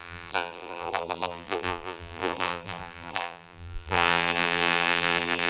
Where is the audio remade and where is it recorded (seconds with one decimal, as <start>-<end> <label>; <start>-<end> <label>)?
0.0-5.5 remade